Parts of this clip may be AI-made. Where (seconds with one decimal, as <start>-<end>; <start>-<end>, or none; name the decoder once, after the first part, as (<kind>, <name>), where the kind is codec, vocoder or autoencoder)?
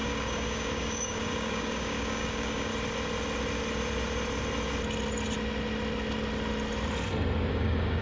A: 0.0-2.7 (codec, DAC); 7.5-8.0